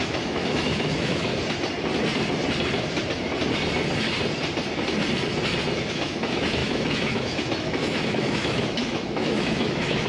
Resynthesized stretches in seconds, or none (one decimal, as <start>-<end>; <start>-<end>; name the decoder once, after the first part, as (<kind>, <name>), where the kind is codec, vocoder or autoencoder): 0.0-1.3 (autoencoder, DAC-VAE); 5.9-10.1